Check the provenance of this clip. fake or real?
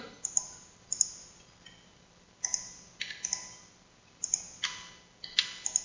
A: real